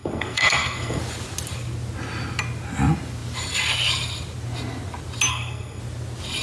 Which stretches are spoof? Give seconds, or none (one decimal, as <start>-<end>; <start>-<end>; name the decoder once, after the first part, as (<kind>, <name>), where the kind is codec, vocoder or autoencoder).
0.0-1.0 (codec, SNAC); 5.3-5.8